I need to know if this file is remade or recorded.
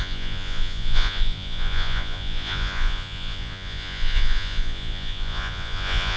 remade